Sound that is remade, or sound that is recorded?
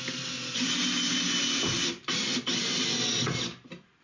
recorded